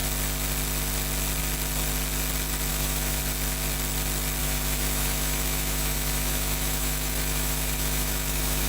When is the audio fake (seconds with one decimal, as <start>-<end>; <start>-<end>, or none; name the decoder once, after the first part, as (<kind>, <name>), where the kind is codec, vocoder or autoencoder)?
2.7-3.2 (autoencoder, DAC-VAE); 4.4-8.7